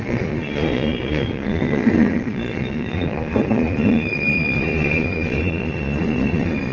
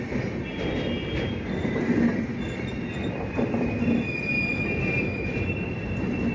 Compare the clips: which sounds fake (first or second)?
first